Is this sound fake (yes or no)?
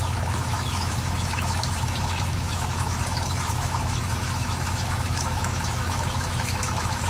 yes